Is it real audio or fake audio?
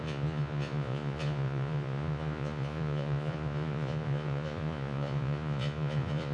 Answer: fake